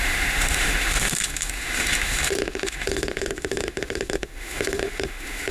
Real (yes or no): no